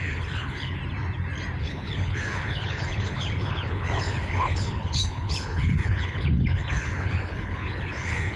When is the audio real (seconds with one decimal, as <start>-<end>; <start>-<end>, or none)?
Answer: 0.8-1.6